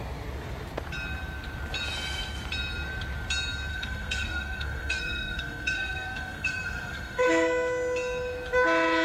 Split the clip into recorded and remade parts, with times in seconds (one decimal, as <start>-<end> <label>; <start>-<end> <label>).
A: 0.0-3.7 recorded; 3.7-7.3 remade; 7.3-9.0 recorded